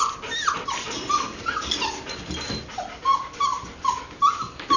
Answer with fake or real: real